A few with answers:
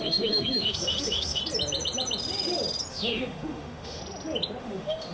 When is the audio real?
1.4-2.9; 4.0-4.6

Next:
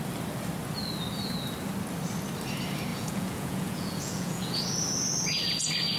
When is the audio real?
0.0-2.9; 4.6-6.0